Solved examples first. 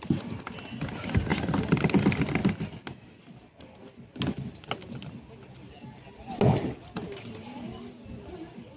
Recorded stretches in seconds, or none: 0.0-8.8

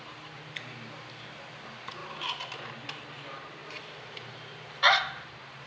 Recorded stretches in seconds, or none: 0.0-3.6

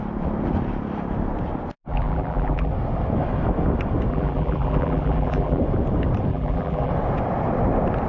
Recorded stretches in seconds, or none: 0.0-1.9; 2.7-4.1; 5.6-6.3; 6.9-8.1